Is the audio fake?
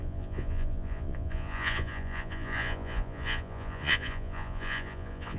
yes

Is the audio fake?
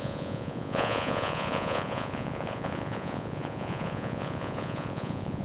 yes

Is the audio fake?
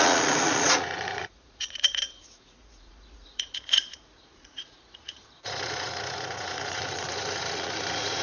yes